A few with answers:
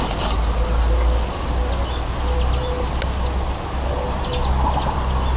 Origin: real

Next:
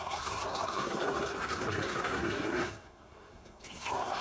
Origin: fake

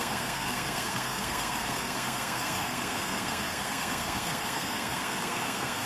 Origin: fake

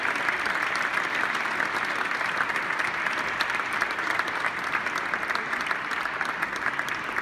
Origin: real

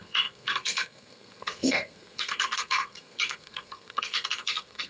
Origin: fake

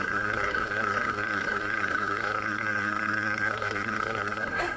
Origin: fake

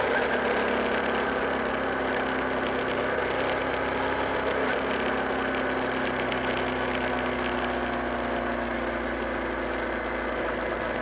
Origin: real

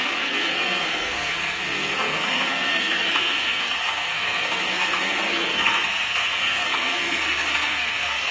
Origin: fake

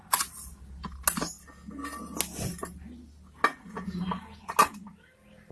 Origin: real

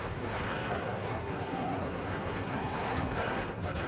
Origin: fake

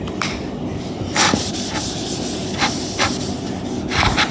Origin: real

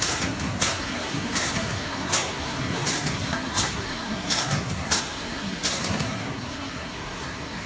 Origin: fake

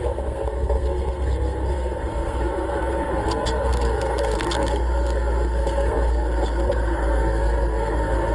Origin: fake